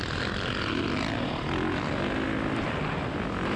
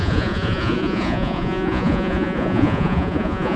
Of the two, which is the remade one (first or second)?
second